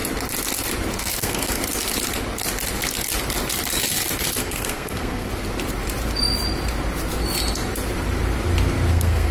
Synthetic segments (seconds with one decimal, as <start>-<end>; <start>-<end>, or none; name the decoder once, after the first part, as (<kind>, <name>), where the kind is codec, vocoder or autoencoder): 1.0-1.6 (codec, SNAC); 4.4-5.3; 8.9-9.3